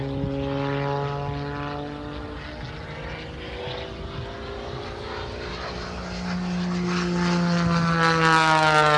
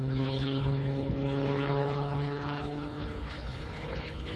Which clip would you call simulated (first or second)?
second